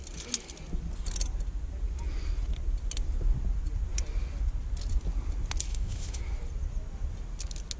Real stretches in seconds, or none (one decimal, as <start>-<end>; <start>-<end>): 0.0-5.7; 6.2-7.8